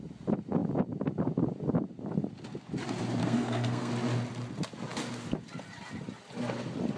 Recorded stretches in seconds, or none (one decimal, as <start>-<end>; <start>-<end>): 0.0-3.2; 3.9-7.0